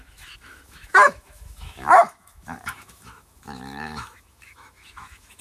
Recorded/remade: remade